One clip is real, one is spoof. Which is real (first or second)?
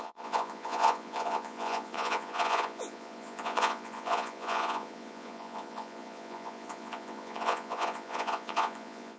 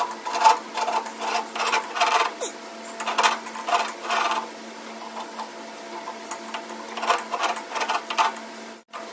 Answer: second